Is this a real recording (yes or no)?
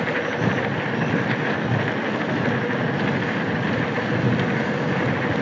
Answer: yes